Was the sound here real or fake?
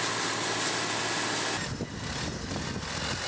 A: real